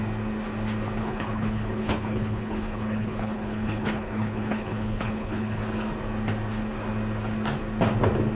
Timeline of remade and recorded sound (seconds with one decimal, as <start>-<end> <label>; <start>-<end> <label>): 0.0-1.0 recorded; 1.0-5.6 remade; 5.6-8.3 recorded

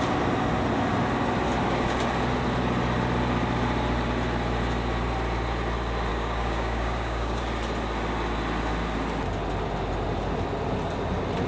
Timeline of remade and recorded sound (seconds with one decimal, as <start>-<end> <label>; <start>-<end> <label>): 0.0-6.1 recorded; 6.1-7.4 remade; 7.4-11.5 recorded